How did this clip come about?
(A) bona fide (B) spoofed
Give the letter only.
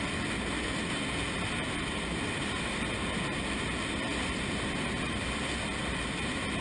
A